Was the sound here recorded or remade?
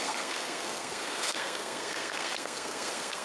remade